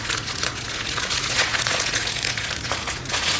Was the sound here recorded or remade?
remade